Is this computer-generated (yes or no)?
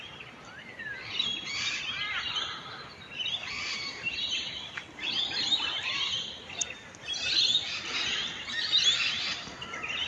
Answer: no